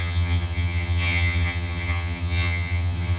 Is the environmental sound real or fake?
fake